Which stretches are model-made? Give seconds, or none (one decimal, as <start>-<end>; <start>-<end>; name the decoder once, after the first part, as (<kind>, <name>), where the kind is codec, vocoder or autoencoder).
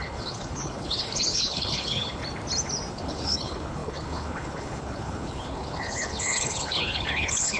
0.0-2.2 (codec, HILCodec); 2.9-7.6